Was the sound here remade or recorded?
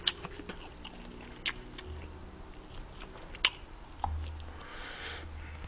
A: recorded